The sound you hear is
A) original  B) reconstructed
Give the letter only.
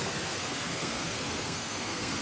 B